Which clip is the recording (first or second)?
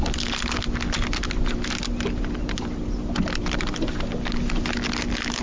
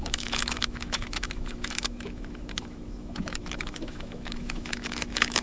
first